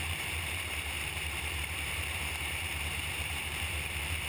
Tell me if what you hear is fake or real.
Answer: fake